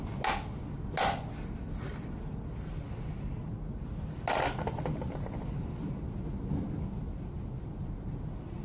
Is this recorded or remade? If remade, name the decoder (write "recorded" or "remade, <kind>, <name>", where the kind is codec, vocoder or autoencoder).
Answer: recorded